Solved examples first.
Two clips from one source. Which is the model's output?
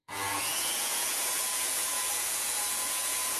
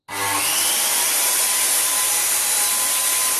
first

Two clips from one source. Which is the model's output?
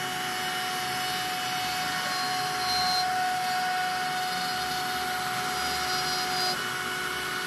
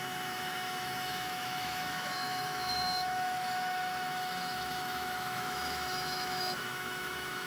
second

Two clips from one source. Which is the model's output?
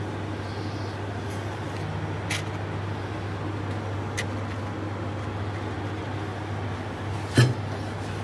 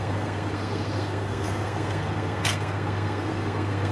second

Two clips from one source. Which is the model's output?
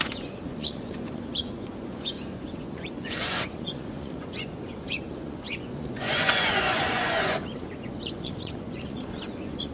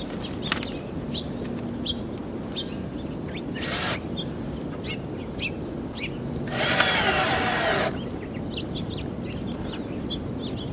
first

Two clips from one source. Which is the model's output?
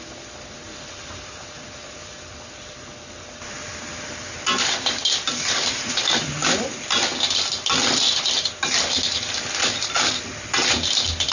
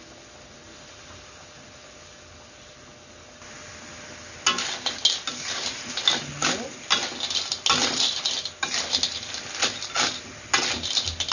first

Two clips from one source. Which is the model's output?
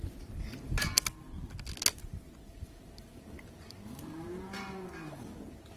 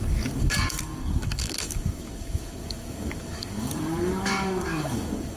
second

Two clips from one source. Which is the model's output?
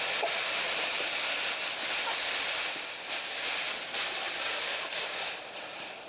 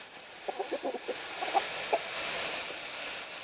first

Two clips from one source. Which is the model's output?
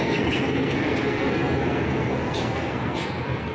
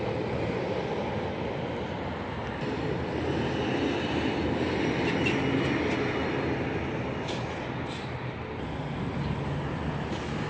first